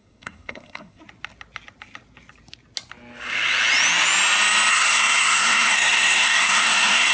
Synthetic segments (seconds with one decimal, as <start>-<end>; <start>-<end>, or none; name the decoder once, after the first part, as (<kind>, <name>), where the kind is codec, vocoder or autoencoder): 0.0-1.0 (codec, SNAC); 4.7-7.1